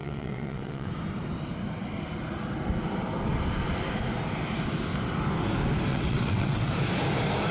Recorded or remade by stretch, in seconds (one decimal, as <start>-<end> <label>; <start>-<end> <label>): 0.0-0.9 remade; 0.9-5.9 recorded; 5.9-6.7 remade; 6.7-7.5 recorded